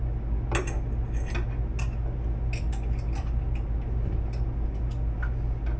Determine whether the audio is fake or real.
real